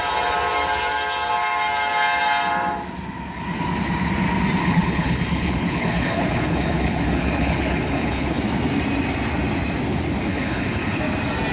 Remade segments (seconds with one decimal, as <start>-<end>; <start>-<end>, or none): 4.6-8.4; 10.3-11.0